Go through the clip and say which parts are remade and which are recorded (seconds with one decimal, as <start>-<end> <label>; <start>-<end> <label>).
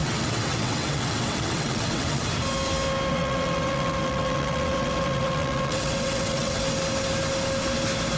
0.0-2.2 remade; 2.2-3.1 recorded; 3.1-6.6 remade; 6.6-8.2 recorded